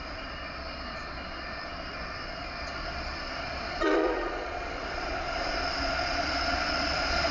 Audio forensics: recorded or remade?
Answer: remade